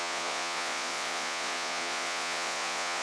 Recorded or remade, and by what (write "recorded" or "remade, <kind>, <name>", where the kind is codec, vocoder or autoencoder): remade, vocoder, Vocos